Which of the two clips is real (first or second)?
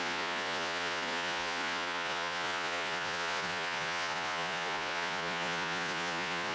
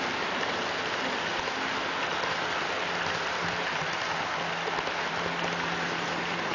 second